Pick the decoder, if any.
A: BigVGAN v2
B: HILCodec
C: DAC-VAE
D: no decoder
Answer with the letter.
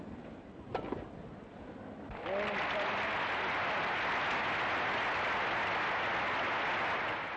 D